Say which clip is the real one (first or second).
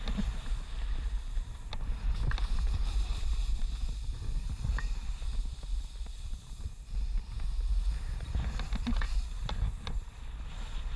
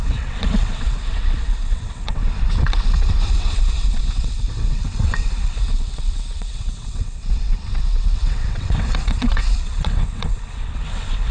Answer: first